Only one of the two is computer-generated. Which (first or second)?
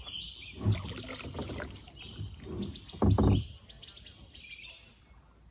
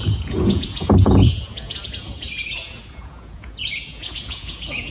second